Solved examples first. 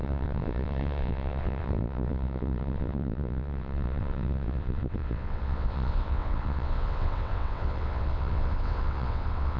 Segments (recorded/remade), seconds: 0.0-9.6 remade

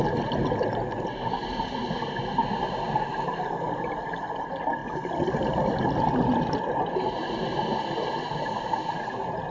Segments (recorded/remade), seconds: 0.0-9.5 recorded

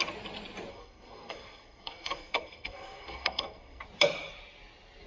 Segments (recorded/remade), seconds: 0.0-0.7 recorded; 0.7-3.8 remade; 3.8-5.1 recorded

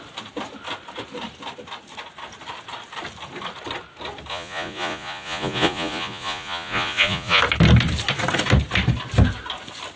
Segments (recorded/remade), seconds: 0.0-4.3 recorded; 4.3-7.4 remade; 7.4-10.0 recorded

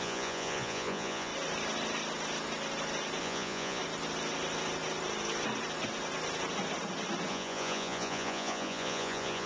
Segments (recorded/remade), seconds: 0.0-1.3 remade; 1.3-3.2 recorded; 3.2-3.8 remade; 3.8-7.3 recorded; 7.3-9.5 remade

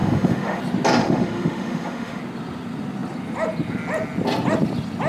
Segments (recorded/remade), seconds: 0.0-0.6 remade; 0.6-1.0 recorded; 1.0-2.2 remade; 2.2-5.1 recorded

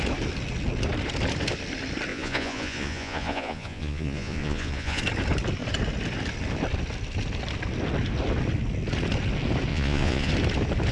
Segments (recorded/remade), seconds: 0.0-2.1 recorded; 2.1-5.0 remade; 5.0-9.7 recorded; 9.7-10.3 remade; 10.3-10.9 recorded